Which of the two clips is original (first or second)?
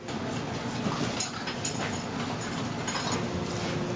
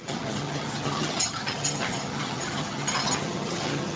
first